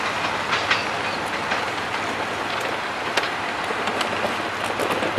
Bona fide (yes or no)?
yes